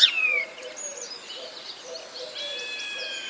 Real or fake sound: real